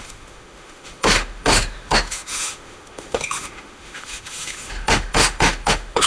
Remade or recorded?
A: remade